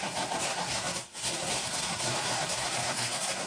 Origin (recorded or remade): remade